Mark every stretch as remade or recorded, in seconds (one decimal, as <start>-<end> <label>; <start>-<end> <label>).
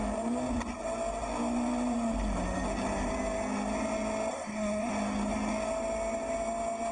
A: 0.0-4.3 recorded; 4.3-4.9 remade; 4.9-6.9 recorded